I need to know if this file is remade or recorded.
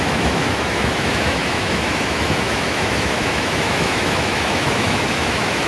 remade